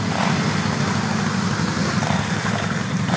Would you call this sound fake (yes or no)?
no